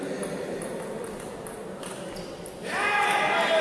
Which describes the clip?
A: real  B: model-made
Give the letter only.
A